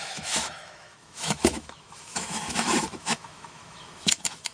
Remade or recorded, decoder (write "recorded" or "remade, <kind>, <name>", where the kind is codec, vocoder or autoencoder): remade, autoencoder, DAC-VAE